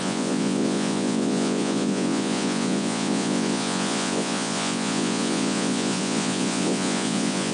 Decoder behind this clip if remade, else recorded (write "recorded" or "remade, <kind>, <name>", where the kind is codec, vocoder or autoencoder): remade, vocoder, Vocos